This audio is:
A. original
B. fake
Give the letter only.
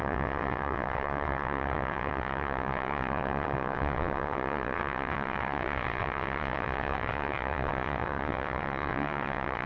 B